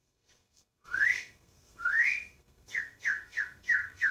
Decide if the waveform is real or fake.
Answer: fake